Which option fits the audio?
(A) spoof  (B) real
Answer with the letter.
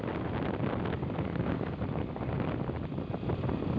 B